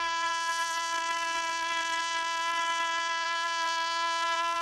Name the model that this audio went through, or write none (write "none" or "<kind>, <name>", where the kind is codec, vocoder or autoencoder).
vocoder, BigVGAN v2